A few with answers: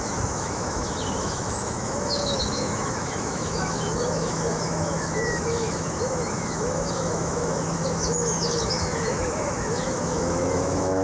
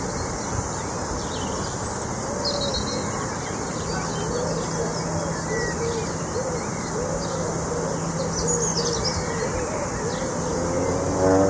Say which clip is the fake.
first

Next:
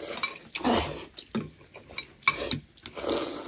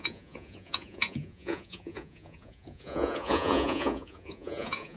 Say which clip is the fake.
second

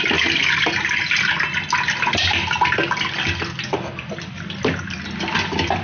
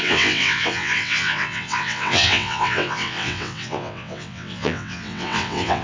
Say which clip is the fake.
second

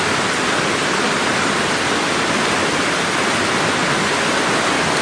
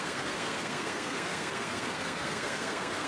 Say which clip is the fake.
second